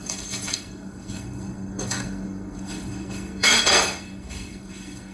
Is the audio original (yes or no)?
no